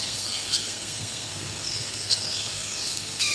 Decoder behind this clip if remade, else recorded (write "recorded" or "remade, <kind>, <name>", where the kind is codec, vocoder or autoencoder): remade, codec, SNAC